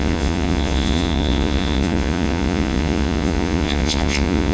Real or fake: fake